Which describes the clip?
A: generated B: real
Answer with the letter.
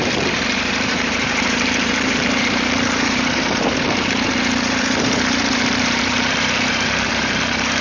A